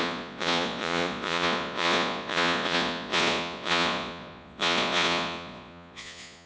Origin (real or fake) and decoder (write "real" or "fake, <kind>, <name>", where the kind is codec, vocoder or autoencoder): fake, vocoder, Vocos